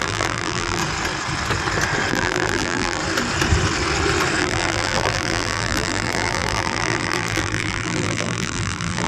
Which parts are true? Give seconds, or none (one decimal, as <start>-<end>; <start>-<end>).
0.8-2.1; 3.0-4.4